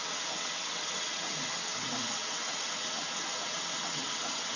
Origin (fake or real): fake